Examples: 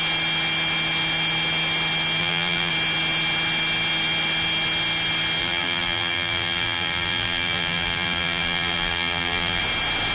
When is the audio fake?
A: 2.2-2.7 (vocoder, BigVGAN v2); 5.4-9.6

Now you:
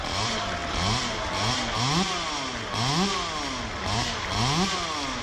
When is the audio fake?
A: none